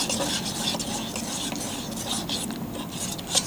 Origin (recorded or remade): recorded